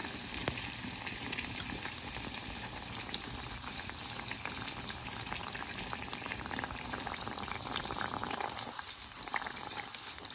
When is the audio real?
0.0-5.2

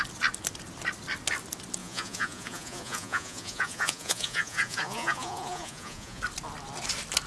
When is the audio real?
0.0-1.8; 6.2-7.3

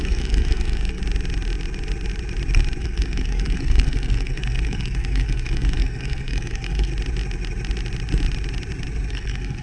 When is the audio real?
1.0-2.8; 6.9-9.1

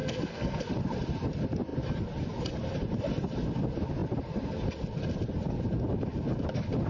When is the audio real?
0.7-6.9

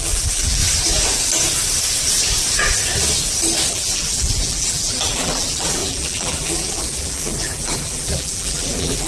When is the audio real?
0.6-3.7

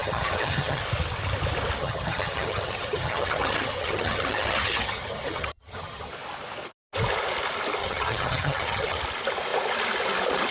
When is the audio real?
0.8-1.8; 6.1-7.8; 9.0-10.5

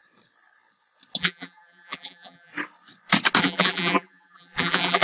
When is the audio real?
0.0-1.2; 2.5-3.4